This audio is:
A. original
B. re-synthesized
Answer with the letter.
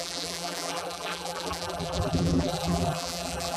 B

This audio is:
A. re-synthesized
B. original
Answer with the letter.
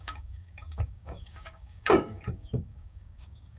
A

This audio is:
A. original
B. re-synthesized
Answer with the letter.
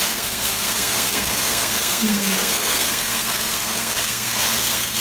B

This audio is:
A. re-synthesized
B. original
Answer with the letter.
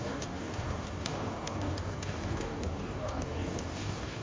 A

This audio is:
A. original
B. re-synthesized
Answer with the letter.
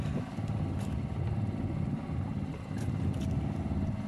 A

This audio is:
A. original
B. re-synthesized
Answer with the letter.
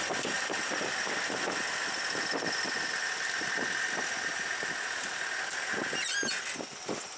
A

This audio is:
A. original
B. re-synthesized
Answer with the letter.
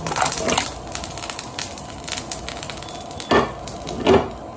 A